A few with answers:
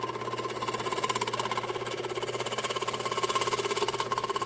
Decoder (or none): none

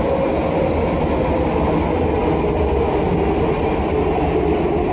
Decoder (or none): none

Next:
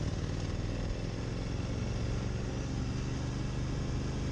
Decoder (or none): none